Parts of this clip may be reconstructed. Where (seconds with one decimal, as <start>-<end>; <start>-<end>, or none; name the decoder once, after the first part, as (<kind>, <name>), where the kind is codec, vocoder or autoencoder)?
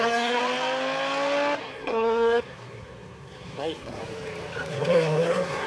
0.0-0.4 (codec, SNAC); 1.6-4.0; 4.7-5.7